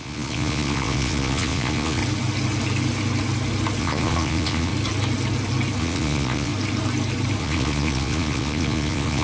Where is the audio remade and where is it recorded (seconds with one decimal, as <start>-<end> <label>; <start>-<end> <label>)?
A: 0.0-2.0 remade; 2.0-3.8 recorded; 3.8-4.7 remade; 4.7-5.8 recorded; 5.8-6.5 remade; 6.5-7.4 recorded; 7.4-9.2 remade